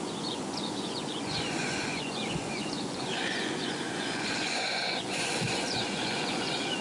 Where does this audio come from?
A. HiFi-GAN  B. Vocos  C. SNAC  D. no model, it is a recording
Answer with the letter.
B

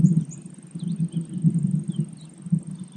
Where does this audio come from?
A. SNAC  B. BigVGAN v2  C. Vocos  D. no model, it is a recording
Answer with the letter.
D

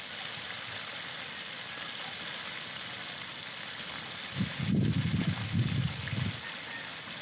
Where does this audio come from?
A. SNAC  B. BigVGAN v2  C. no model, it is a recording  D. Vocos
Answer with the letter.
C